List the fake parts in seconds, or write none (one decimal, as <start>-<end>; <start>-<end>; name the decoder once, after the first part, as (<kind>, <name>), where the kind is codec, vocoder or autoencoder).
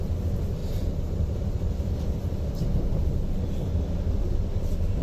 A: 0.6-1.9 (vocoder, BigVGAN v2)